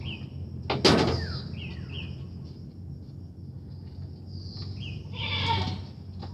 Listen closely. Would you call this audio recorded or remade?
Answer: recorded